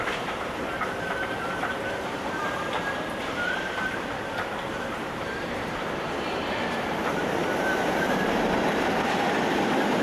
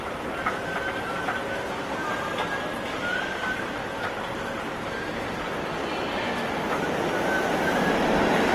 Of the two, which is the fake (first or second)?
first